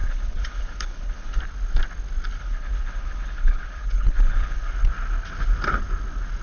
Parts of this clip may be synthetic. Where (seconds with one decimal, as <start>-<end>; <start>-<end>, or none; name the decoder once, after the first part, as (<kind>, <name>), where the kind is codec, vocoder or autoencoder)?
0.0-1.4 (codec, HILCodec); 2.4-4.7